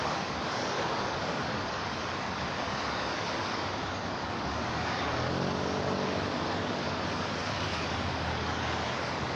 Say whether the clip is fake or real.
fake